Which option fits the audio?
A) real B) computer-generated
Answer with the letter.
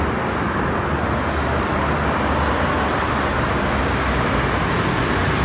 A